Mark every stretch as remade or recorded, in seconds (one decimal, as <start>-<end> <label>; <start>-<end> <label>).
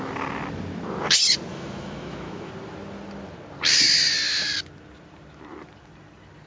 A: 0.0-1.5 recorded; 1.5-2.5 remade; 2.5-6.5 recorded